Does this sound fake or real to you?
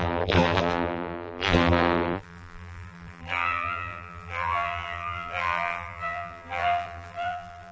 fake